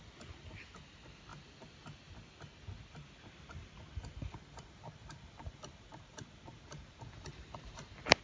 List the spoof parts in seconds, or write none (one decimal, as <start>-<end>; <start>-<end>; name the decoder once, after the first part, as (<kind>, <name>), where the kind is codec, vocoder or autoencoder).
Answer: none